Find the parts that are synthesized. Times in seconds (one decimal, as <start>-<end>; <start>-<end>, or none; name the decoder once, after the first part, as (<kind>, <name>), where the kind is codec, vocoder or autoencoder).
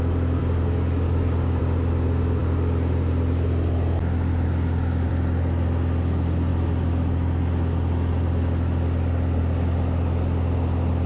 0.4-1.6 (codec, DAC)